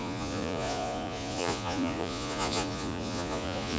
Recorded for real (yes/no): no